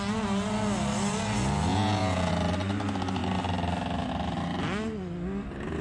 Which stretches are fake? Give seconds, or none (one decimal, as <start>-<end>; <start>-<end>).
1.7-2.3

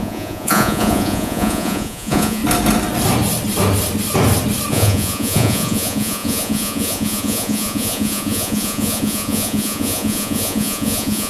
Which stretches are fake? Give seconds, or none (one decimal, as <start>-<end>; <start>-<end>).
0.0-2.4; 4.7-11.3